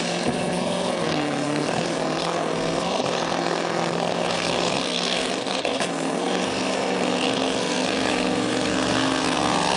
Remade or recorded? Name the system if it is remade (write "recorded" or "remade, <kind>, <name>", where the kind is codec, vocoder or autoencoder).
remade, codec, SNAC